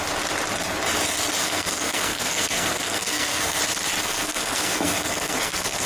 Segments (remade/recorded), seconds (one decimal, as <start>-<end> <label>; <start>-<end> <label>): 0.0-1.4 recorded; 1.4-3.6 remade; 3.6-4.0 recorded; 4.0-5.9 remade